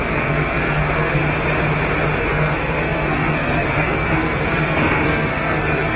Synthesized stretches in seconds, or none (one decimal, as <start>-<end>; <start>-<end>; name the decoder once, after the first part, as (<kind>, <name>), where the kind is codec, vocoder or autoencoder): 0.0-1.2 (codec, SNAC); 2.2-6.0